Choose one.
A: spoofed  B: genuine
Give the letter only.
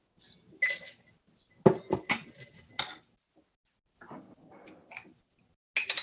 B